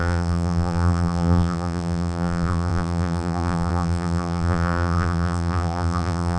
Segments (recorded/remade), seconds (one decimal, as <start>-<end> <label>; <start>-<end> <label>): 0.0-6.4 remade